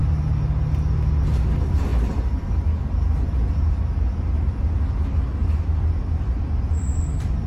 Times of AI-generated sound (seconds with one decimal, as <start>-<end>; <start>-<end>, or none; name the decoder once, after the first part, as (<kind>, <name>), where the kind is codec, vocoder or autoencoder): none

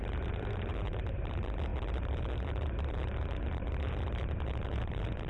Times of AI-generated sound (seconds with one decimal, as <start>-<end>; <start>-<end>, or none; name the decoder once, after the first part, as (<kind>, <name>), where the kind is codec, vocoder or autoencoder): 0.0-5.3 (vocoder, BigVGAN v2)

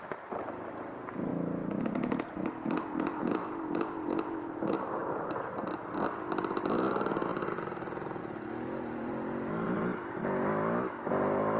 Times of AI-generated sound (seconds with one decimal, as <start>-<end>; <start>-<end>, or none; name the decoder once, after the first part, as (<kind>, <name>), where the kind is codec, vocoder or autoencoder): 1.3-1.8 (vocoder, BigVGAN v2); 5.0-5.8

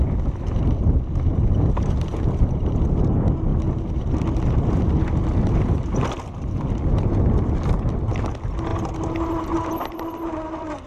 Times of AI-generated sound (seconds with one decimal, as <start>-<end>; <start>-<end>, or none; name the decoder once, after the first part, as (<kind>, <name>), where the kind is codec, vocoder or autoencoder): none

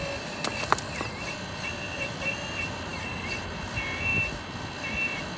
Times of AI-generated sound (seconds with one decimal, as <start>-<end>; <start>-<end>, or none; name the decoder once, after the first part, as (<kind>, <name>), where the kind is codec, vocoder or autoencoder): 4.1-4.6 (vocoder, BigVGAN v2)